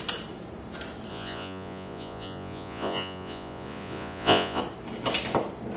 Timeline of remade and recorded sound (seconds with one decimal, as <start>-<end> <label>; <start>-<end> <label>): 0.0-1.1 recorded; 1.1-4.6 remade; 4.6-5.8 recorded